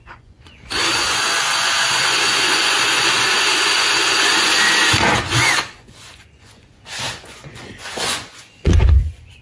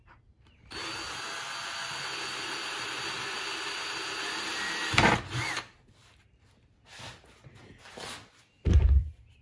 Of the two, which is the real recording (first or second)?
second